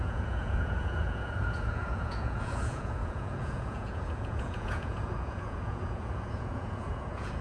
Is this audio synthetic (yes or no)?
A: yes